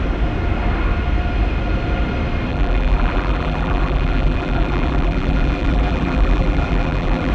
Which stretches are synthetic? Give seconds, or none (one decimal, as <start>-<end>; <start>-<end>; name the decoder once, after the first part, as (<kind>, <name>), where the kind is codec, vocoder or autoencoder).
2.5-7.3 (vocoder, BigVGAN v2)